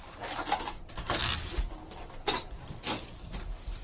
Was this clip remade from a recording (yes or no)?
no